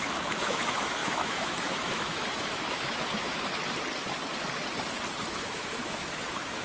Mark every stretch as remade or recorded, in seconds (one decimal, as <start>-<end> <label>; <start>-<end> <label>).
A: 0.0-3.5 remade; 3.5-5.2 recorded; 5.2-6.6 remade